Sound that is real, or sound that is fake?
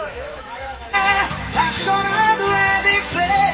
fake